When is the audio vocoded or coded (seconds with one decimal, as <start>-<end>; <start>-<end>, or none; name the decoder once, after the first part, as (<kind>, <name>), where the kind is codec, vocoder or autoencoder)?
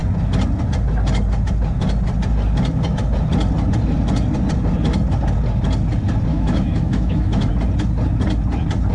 6.3-7.5 (autoencoder, DAC-VAE)